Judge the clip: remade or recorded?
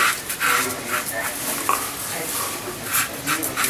recorded